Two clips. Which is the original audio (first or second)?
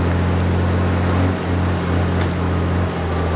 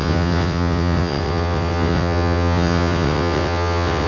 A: first